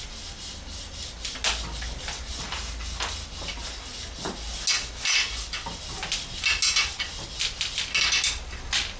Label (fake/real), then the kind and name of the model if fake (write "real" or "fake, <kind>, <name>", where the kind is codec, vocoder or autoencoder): real